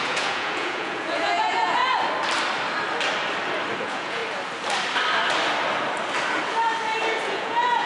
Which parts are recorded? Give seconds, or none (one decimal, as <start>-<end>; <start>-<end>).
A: 1.8-3.8; 4.2-7.2